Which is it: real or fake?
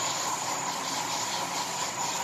real